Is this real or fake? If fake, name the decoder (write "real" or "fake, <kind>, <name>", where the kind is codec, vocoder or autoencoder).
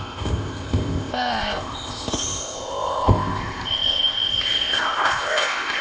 fake, codec, ZipCodec